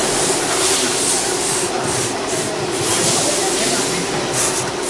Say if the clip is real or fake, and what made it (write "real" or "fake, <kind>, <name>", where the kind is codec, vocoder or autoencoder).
real